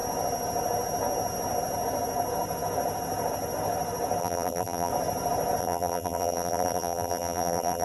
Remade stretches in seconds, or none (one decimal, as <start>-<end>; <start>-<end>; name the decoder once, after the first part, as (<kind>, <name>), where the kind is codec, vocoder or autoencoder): 4.2-4.9 (vocoder, BigVGAN v2); 5.6-7.8